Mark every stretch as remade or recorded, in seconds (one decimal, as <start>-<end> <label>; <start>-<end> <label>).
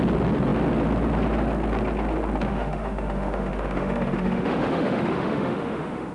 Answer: 0.0-2.5 recorded; 2.5-6.1 remade